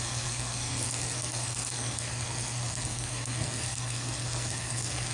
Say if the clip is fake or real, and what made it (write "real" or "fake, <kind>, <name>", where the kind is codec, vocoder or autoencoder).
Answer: fake, codec, SNAC